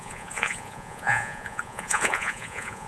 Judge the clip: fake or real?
fake